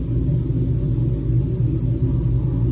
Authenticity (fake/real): real